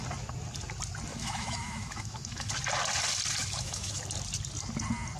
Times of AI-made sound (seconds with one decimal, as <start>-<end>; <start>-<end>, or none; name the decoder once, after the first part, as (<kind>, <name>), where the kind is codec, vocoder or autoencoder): 1.1-2.5 (autoencoder, DAC-VAE); 3.4-4.0